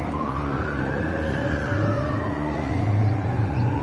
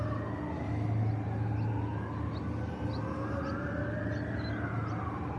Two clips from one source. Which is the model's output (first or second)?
first